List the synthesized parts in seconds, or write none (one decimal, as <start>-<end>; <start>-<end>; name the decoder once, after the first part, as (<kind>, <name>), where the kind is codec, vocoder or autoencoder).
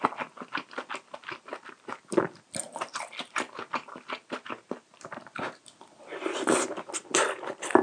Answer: none